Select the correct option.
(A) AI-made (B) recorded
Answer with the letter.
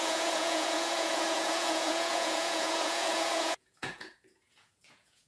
A